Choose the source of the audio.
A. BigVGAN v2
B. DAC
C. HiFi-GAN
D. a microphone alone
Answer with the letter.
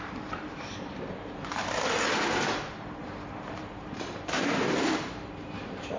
A